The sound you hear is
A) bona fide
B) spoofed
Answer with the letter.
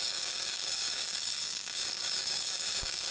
B